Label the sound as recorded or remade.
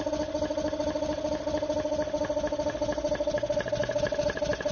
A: recorded